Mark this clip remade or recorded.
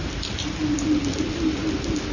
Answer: recorded